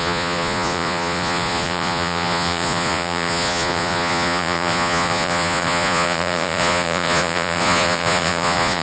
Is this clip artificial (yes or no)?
yes